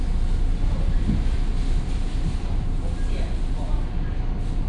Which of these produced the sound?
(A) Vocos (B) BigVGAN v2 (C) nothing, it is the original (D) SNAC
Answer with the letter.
C